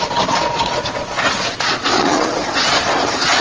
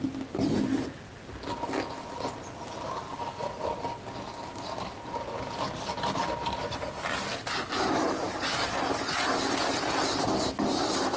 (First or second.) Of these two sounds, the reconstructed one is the first